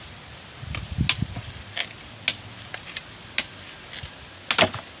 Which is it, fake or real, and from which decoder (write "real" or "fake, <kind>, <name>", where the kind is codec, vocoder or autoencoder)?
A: real